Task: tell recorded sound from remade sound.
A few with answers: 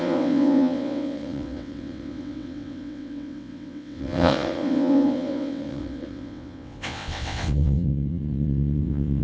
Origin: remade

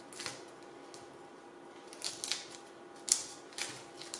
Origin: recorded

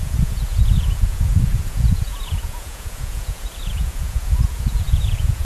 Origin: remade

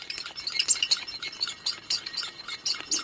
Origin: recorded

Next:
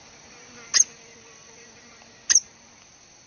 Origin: recorded